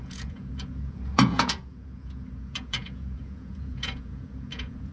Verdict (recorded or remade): remade